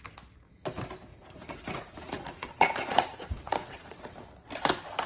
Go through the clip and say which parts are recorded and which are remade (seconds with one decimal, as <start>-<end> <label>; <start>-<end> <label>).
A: 0.0-1.1 recorded; 1.1-4.2 remade; 4.2-5.1 recorded